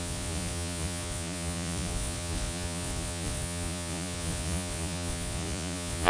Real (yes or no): no